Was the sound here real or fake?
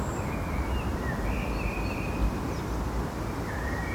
real